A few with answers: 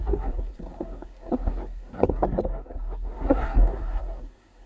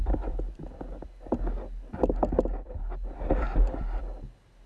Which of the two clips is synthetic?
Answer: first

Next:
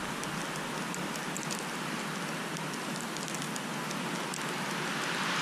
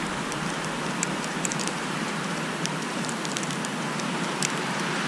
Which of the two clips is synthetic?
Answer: second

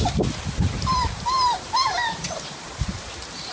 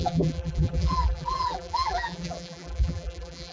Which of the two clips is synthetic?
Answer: second